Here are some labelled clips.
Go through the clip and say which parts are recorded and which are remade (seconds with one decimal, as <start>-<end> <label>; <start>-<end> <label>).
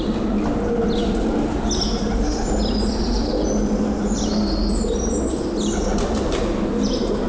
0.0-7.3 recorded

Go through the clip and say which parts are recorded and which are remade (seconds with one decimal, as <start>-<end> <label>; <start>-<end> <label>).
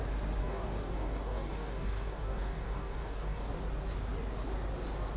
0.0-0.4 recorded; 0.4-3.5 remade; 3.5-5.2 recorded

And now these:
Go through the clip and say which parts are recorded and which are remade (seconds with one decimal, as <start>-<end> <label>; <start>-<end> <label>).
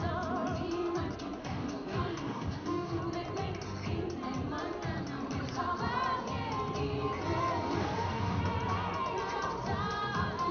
0.0-1.4 recorded; 1.4-3.0 remade; 3.0-7.8 recorded; 7.8-8.4 remade; 8.4-10.5 recorded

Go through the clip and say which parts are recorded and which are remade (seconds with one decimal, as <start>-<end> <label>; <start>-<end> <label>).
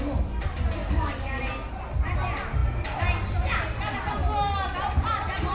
0.0-0.8 recorded; 0.8-1.4 remade; 1.4-5.5 recorded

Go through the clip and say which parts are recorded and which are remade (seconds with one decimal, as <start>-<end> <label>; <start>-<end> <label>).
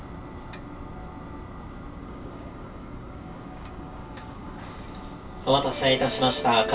0.0-2.0 recorded; 2.0-4.6 remade; 4.6-6.7 recorded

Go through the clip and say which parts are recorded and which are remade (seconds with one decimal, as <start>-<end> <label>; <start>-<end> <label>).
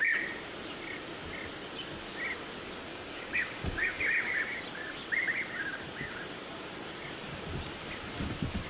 0.0-2.9 recorded; 2.9-4.0 remade; 4.0-8.7 recorded